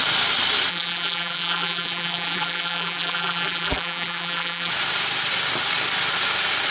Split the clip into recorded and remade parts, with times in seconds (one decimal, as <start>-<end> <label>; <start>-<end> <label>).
0.0-0.7 recorded; 0.7-4.7 remade; 4.7-6.7 recorded